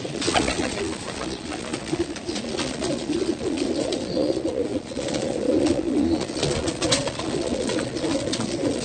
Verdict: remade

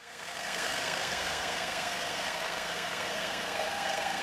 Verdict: remade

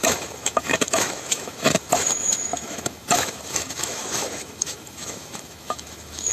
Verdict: remade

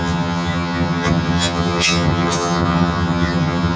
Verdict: remade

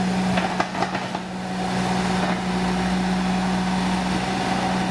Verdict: recorded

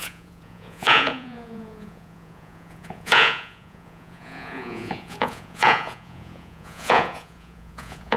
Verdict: remade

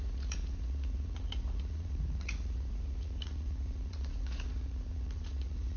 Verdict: remade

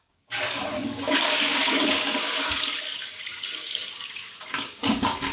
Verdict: remade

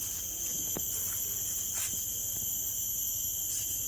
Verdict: recorded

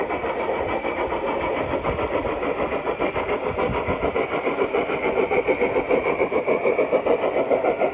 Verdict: recorded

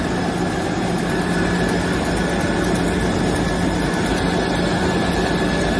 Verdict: recorded